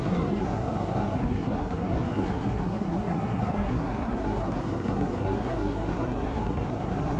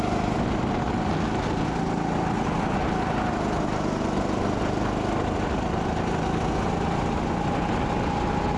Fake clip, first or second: first